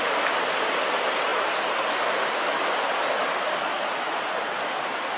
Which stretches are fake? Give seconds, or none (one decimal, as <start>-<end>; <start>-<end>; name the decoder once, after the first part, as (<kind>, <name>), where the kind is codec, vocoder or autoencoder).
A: none